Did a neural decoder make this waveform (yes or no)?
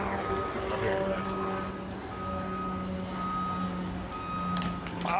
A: no